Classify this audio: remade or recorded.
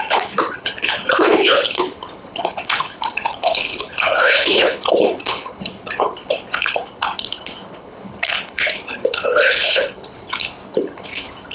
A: remade